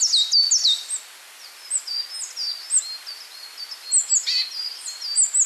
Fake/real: real